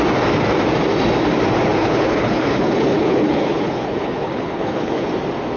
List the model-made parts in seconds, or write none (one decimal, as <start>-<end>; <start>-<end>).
1.7-5.1